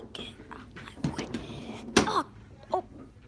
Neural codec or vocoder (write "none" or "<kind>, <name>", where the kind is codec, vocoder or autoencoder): none